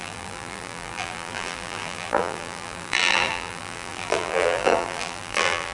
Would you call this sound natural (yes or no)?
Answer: no